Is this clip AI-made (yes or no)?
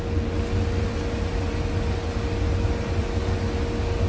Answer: no